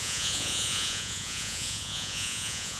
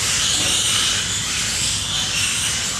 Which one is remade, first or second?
first